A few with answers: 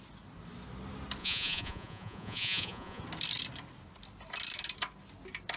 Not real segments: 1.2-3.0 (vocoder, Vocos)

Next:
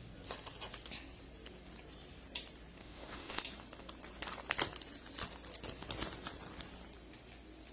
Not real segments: 2.8-3.4 (autoencoder, DAC-VAE)

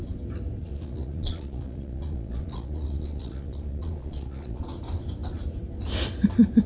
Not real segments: 0.6-4.6 (vocoder, Vocos)

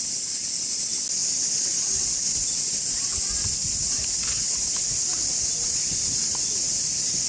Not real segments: none

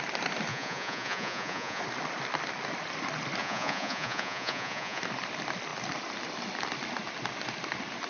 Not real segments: 0.5-1.8 (vocoder, Vocos); 3.4-5.0

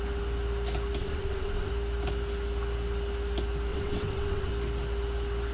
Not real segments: 1.0-1.7 (vocoder, WaveNeXt); 3.7-4.5

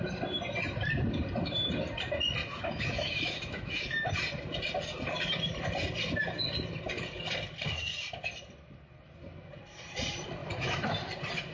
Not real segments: 2.4-4.1 (autoencoder, DAC-VAE); 10.4-11.1

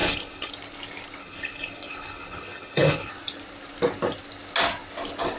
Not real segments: 0.0-0.5 (codec, HILCodec); 1.2-3.1